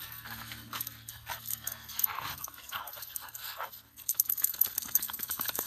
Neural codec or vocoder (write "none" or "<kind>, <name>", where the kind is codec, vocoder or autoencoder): codec, SNAC